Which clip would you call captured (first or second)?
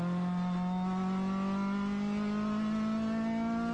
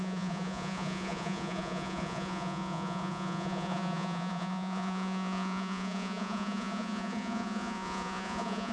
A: first